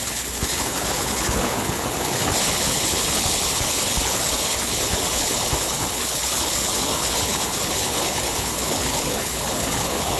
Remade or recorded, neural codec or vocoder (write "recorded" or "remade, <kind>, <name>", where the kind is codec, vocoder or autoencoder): remade, codec, HILCodec